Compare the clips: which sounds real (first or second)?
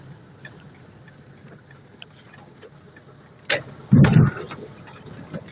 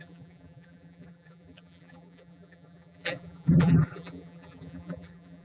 first